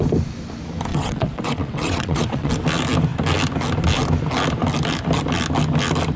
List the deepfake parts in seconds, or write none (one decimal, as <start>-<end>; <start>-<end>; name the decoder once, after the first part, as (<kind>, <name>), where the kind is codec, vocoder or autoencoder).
0.9-2.5 (vocoder, WaveNeXt)